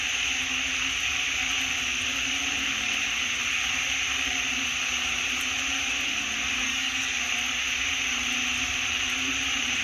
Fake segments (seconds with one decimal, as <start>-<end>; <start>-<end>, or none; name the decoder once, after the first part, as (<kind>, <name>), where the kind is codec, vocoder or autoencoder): 6.6-7.2 (codec, DAC)